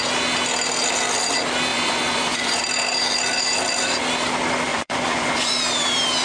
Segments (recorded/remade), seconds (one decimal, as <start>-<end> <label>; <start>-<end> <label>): 0.0-1.7 recorded; 1.7-2.6 remade; 2.6-4.7 recorded; 4.7-5.6 remade; 5.6-6.2 recorded

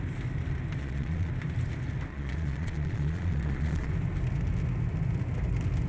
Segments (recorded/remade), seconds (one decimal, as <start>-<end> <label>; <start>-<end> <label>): 0.0-0.8 recorded; 0.8-1.3 remade; 1.3-2.1 recorded; 2.1-3.9 remade; 3.9-5.9 recorded

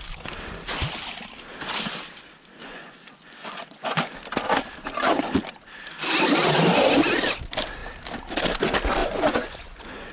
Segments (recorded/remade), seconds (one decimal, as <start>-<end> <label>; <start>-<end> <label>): 0.0-2.6 recorded; 2.6-4.1 remade; 4.1-9.0 recorded; 9.0-10.1 remade

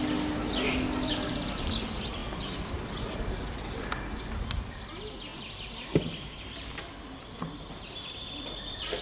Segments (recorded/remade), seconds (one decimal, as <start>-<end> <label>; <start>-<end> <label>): 0.0-9.0 recorded

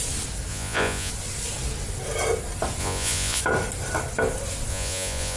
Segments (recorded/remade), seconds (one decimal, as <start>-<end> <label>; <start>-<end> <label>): 0.0-0.5 recorded; 0.5-1.1 remade; 1.1-2.8 recorded; 2.8-3.4 remade; 3.4-4.7 recorded; 4.7-5.4 remade